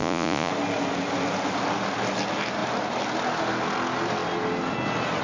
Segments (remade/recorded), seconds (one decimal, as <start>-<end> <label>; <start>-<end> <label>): 0.0-0.5 remade; 0.5-5.2 recorded